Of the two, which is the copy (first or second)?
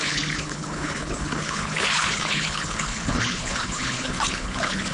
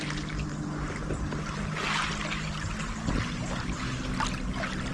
first